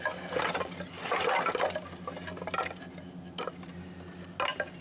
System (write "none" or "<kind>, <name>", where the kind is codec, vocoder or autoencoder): none